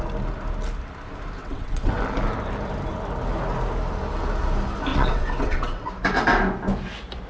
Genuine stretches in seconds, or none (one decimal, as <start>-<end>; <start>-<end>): 0.0-1.4; 2.0-4.9; 5.9-7.3